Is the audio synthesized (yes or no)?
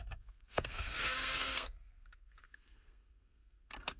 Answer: yes